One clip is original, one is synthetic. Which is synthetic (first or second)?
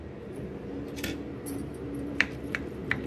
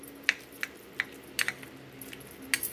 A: first